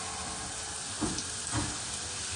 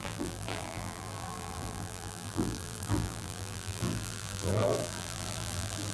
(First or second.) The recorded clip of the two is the first